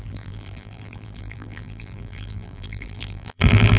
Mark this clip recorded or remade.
remade